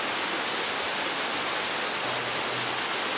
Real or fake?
real